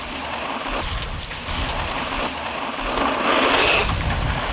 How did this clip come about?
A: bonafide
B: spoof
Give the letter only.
A